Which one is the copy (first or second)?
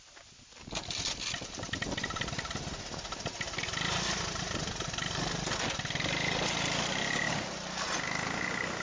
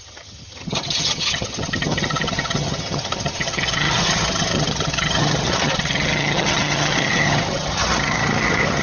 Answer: second